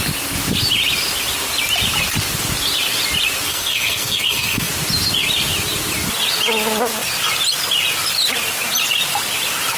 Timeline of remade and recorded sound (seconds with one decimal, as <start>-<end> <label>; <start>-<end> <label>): 0.0-3.5 recorded; 3.5-4.7 remade; 4.7-9.8 recorded